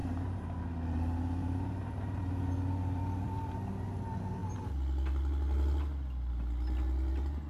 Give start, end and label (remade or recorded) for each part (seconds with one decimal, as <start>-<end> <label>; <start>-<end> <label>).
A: 0.0-0.6 remade; 0.6-1.4 recorded; 1.4-2.5 remade; 2.5-7.5 recorded